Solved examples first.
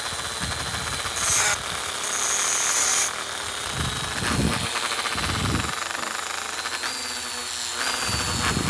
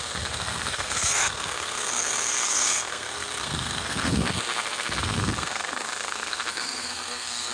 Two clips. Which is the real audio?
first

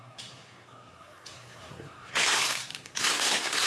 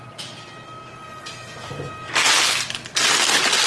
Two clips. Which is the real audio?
second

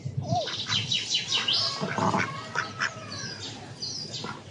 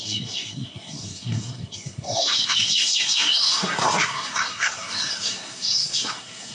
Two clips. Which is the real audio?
first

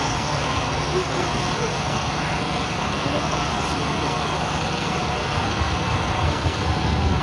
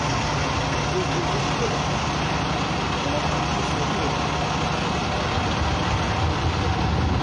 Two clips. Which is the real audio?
second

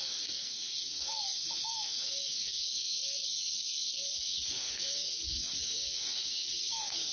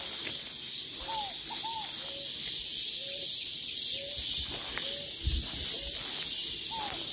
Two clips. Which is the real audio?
second